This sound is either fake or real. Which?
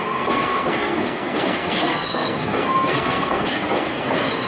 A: fake